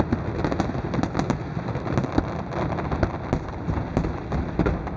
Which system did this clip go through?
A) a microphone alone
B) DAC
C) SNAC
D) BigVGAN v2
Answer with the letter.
A